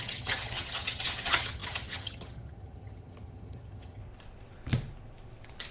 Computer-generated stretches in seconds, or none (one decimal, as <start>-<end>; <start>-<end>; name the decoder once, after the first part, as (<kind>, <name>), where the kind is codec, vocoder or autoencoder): 0.0-4.0 (vocoder, HiFi-GAN)